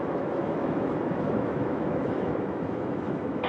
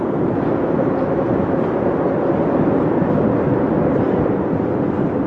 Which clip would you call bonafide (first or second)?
second